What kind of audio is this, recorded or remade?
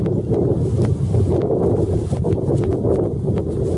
recorded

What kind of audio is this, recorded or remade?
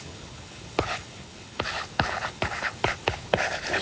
remade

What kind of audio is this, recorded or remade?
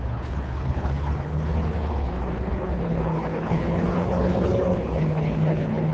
remade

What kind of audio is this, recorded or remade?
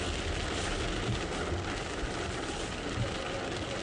recorded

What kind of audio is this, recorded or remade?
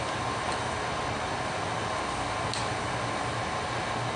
recorded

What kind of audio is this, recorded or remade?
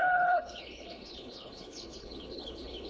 remade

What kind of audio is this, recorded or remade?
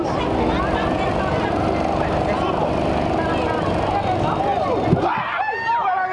recorded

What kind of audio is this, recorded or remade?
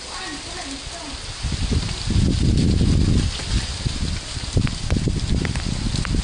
recorded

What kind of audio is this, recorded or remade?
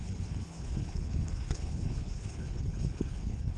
remade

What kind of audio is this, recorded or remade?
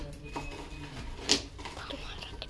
recorded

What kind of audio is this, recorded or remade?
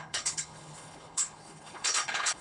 remade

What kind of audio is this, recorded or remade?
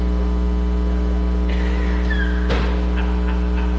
recorded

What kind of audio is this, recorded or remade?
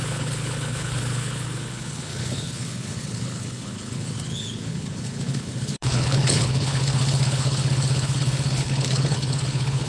remade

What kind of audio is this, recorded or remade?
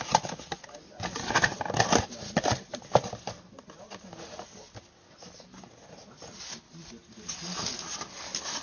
recorded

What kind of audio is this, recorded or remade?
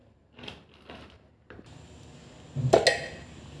recorded